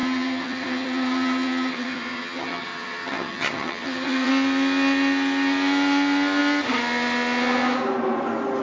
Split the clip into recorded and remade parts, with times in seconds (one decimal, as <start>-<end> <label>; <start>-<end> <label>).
0.0-4.3 remade; 4.3-8.6 recorded